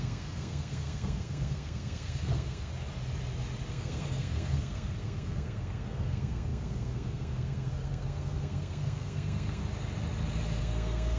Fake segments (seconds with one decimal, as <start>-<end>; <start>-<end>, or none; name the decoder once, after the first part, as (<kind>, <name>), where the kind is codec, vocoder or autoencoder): 0.0-2.7 (codec, SNAC); 3.7-9.6; 10.6-11.2